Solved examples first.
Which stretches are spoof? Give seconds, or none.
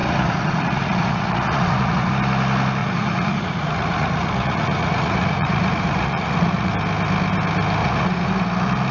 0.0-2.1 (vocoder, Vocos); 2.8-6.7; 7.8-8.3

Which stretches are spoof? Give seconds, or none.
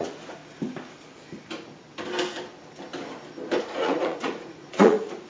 0.0-0.4 (vocoder, Vocos); 3.6-5.3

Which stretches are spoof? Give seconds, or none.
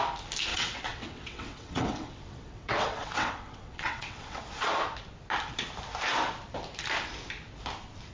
0.5-4.4 (vocoder, WaveNeXt)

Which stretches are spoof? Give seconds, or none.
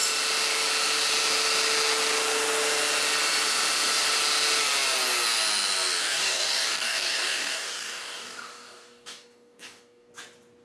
6.0-10.1 (codec, DAC)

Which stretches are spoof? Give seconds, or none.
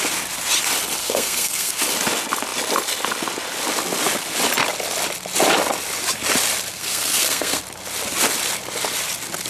1.0-1.8 (codec, SNAC); 6.7-7.6